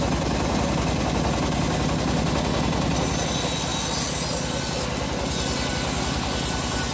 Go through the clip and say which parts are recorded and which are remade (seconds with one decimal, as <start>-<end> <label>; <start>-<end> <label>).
0.0-6.9 recorded